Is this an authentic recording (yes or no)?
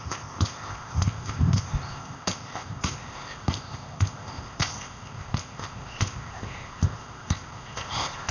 no